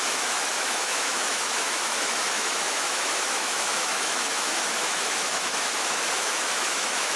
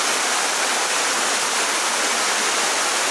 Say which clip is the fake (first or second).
first